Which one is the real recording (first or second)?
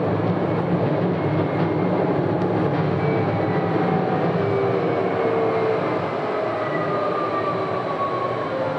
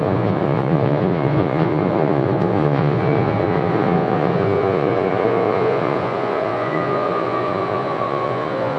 first